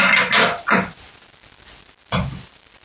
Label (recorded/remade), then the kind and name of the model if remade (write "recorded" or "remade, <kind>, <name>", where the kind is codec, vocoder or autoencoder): recorded